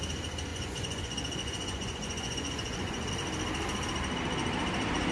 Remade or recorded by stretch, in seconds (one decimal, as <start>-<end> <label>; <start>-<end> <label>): 0.0-0.5 recorded; 0.5-3.1 remade; 3.1-5.1 recorded

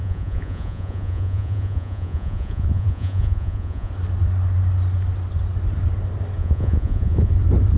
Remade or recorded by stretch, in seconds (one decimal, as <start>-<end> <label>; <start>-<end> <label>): 0.0-3.9 remade; 3.9-6.4 recorded; 6.4-7.3 remade; 7.3-7.8 recorded

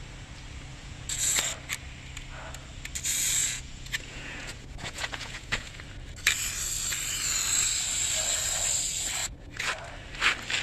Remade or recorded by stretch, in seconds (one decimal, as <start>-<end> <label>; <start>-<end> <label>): 0.0-0.7 recorded; 0.7-1.4 remade; 1.4-3.4 recorded; 3.4-5.8 remade; 5.8-9.2 recorded; 9.2-9.7 remade; 9.7-10.6 recorded

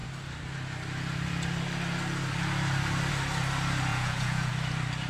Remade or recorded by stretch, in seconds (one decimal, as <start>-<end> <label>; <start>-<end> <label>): 0.0-3.9 recorded; 3.9-4.5 remade; 4.5-5.1 recorded